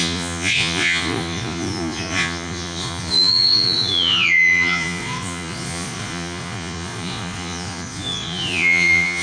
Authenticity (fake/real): fake